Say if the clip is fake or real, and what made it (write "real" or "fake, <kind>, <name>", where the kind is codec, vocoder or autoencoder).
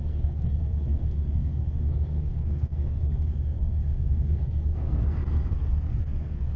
fake, codec, SNAC